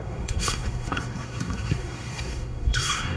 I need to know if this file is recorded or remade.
remade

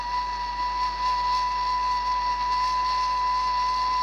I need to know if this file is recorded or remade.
recorded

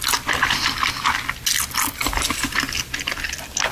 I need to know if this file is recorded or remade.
recorded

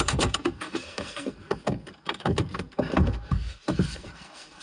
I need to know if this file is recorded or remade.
remade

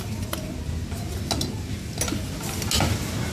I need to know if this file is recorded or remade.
recorded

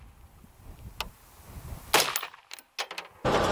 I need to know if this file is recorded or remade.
recorded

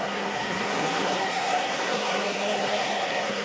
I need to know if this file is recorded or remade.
remade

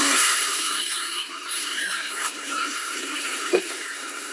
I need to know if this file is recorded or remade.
remade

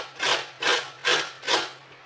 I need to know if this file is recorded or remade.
recorded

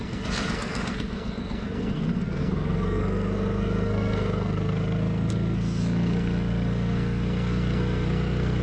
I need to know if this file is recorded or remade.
remade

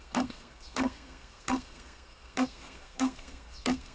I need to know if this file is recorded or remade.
remade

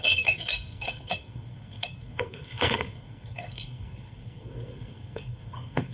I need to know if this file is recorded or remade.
remade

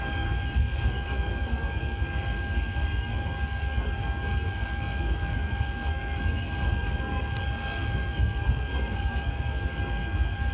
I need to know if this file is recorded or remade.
remade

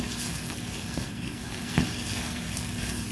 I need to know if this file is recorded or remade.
remade